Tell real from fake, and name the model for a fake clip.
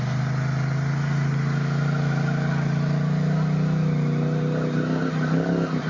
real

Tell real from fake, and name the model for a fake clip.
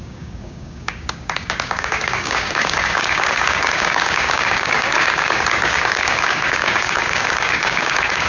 fake, codec, DAC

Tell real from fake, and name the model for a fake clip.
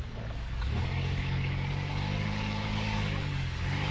fake, codec, DAC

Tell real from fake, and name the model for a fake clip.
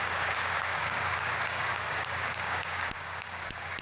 fake, codec, DAC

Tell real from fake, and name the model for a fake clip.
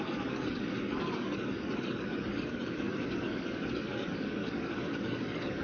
fake, codec, DAC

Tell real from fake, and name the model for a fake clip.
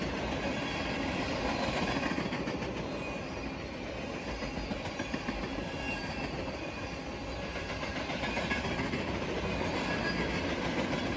real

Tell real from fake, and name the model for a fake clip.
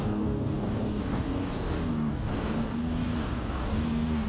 fake, codec, DAC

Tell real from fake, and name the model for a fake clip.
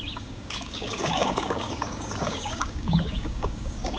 fake, codec, DAC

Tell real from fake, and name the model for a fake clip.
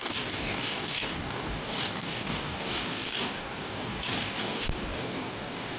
fake, codec, DAC